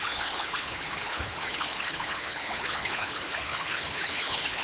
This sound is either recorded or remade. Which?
remade